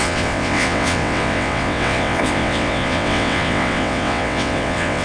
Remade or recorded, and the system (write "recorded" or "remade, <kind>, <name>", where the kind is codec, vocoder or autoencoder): remade, vocoder, WaveNeXt